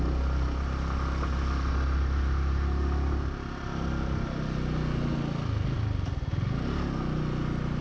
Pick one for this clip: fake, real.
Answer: real